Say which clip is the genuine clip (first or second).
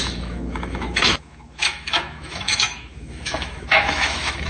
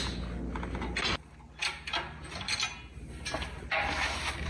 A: second